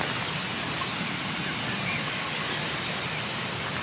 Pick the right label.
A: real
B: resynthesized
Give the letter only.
A